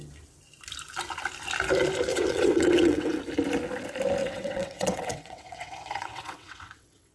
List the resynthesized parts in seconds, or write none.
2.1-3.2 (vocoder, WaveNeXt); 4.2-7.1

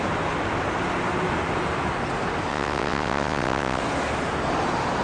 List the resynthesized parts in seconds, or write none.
2.5-3.8 (vocoder, WaveNeXt)

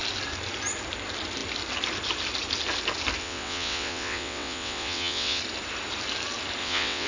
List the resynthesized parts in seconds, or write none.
3.2-5.4 (vocoder, WaveNeXt); 6.6-7.1

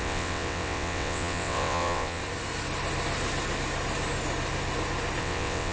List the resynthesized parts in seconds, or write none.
0.0-2.2 (vocoder, WaveNeXt); 5.2-5.7

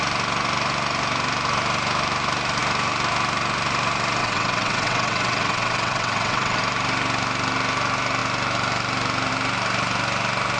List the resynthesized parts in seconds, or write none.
4.2-6.6 (vocoder, WaveNeXt)

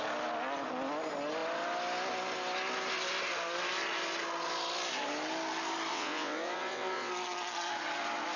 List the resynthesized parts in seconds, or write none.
5.9-7.1 (vocoder, WaveNeXt)

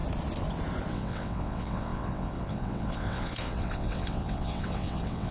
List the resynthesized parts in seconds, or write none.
0.9-5.3 (vocoder, WaveNeXt)